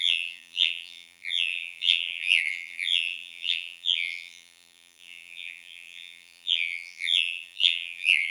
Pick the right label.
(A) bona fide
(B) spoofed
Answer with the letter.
B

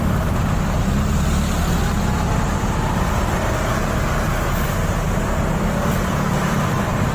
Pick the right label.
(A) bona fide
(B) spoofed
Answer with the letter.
A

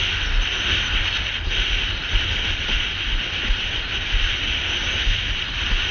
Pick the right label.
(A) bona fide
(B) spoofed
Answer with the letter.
A